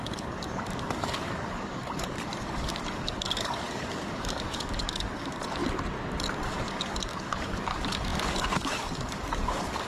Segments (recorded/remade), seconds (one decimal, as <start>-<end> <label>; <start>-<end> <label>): 0.0-5.6 remade; 5.6-6.3 recorded; 6.3-9.9 remade